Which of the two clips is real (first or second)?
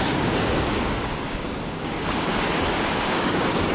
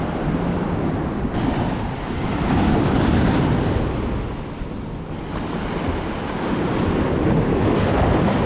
second